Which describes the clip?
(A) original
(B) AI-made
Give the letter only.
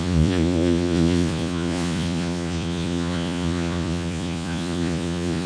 B